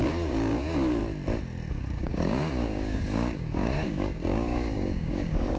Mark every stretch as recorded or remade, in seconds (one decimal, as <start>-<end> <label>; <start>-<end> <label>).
0.0-1.0 remade; 1.0-1.7 recorded; 1.7-5.6 remade